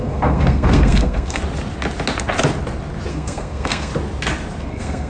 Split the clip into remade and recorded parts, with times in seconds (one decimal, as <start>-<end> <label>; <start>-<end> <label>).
0.0-1.4 remade; 1.4-3.1 recorded; 3.1-3.9 remade; 3.9-4.6 recorded; 4.6-5.1 remade